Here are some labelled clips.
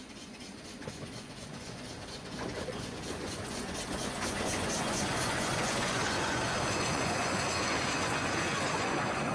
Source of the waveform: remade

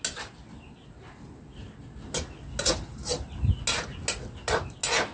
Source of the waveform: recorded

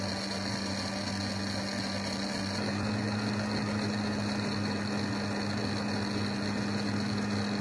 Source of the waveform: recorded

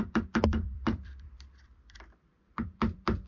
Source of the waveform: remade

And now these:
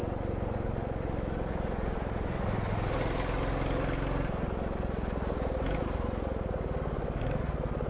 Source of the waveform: recorded